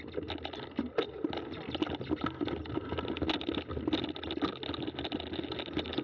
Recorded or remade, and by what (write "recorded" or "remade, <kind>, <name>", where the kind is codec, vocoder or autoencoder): recorded